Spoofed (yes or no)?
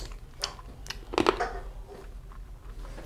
no